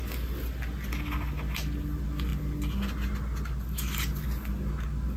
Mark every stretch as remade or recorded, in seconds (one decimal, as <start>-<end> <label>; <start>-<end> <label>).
0.0-5.2 recorded

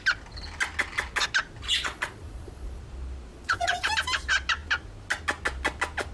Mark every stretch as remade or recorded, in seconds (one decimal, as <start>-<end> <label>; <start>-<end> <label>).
0.0-1.7 recorded; 1.7-2.8 remade; 2.8-3.3 recorded; 3.3-3.9 remade; 3.9-6.1 recorded

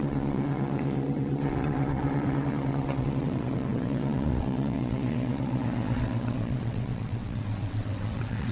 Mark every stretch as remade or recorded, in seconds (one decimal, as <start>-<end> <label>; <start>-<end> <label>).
0.0-8.5 remade

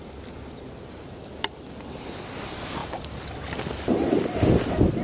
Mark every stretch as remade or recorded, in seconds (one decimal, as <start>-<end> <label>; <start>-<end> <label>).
0.0-5.0 recorded

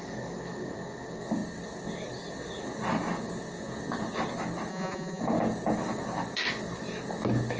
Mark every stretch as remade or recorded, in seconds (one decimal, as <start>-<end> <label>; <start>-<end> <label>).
0.0-4.7 recorded; 4.7-5.2 remade; 5.2-7.6 recorded

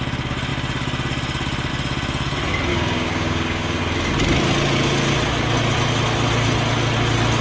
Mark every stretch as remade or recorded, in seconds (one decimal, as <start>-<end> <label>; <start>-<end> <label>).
0.0-2.7 recorded; 2.7-3.8 remade; 3.8-7.4 recorded

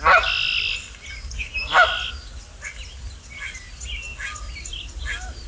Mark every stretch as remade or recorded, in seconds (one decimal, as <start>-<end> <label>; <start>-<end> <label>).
0.0-5.5 recorded